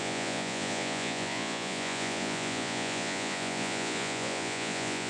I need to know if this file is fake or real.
fake